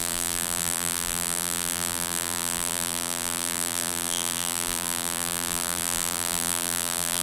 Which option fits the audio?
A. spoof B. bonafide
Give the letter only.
A